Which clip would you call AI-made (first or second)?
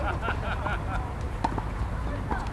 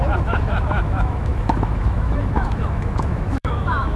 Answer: second